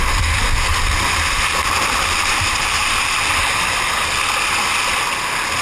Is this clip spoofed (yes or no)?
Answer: no